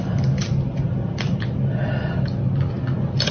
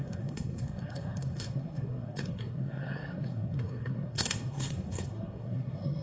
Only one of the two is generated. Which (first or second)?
second